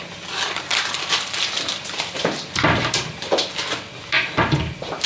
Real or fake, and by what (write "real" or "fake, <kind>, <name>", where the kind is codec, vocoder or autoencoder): fake, vocoder, BigVGAN v2